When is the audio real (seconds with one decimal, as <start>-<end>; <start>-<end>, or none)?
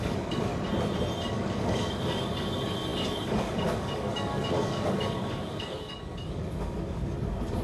0.5-1.3